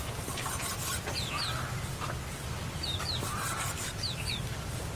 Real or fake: real